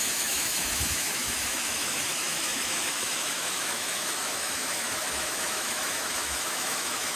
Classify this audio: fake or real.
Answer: fake